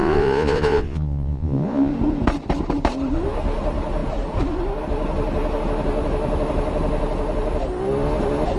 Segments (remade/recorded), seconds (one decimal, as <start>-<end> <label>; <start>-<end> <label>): 0.0-1.9 remade; 1.9-8.6 recorded